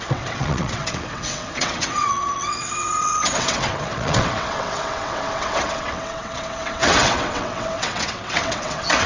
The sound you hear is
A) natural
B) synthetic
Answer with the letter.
B